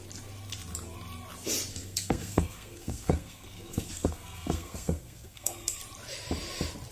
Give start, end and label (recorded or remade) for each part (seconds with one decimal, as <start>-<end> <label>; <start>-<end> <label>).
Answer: 0.0-1.7 recorded; 1.7-5.8 remade; 5.8-6.9 recorded